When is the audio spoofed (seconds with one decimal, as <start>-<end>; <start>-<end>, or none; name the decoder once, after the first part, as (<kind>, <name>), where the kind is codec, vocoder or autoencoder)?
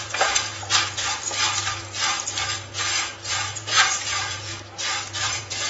0.0-0.5 (vocoder, Vocos); 3.3-4.5; 5.3-5.7